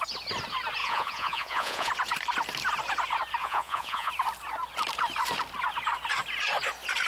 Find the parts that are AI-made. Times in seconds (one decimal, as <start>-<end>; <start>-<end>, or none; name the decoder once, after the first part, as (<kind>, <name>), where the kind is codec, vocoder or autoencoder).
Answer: 0.8-1.9 (vocoder, Vocos); 3.4-4.1